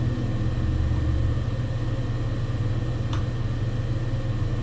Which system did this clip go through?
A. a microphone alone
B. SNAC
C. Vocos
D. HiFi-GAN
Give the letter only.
A